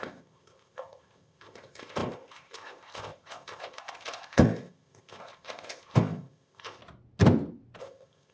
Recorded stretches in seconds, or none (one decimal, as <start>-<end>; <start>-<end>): 6.8-7.8